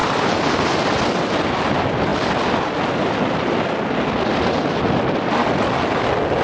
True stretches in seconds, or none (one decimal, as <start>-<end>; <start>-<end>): 1.0-6.4